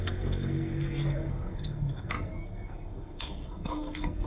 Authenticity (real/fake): fake